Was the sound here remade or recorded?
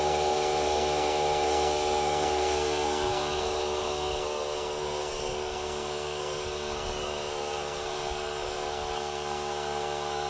remade